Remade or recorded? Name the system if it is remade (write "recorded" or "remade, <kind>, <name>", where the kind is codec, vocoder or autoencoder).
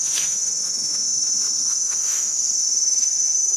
remade, autoencoder, DAC-VAE